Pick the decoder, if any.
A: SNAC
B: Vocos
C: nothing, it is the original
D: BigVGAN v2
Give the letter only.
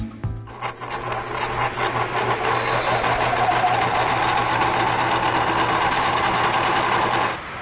C